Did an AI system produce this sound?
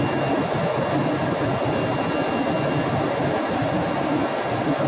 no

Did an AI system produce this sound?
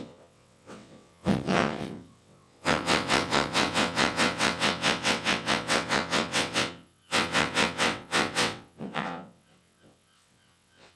yes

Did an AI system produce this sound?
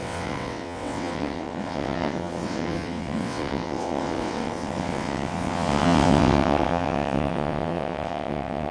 yes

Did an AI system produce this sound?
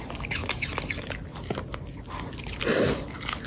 no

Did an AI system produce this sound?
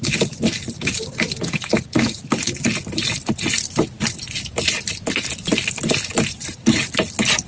no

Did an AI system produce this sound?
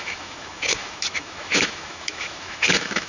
yes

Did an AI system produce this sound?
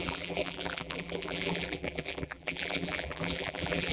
yes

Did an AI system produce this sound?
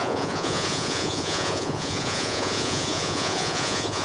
yes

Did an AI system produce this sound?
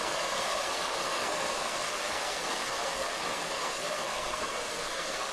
yes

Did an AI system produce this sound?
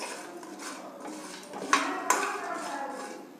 no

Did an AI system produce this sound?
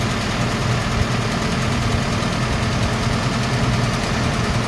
no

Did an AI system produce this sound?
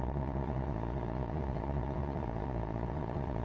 yes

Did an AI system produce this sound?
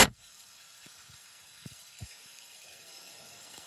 yes